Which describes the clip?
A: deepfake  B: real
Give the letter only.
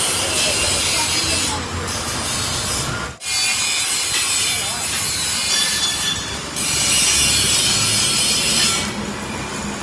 B